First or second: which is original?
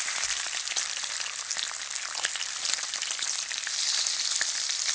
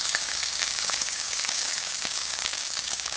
first